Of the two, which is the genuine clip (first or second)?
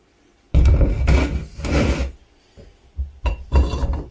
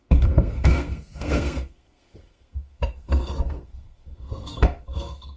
first